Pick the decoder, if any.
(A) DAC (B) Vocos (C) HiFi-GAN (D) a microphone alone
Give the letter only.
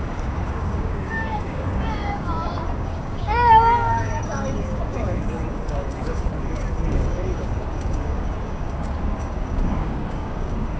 A